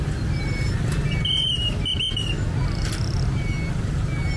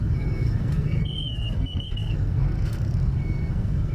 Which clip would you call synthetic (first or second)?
second